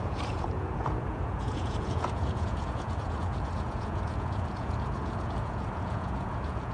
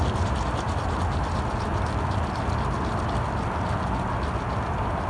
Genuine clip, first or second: second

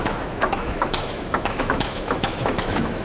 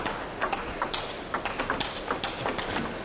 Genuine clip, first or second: second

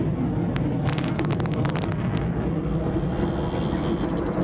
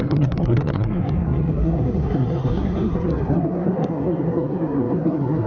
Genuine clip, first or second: first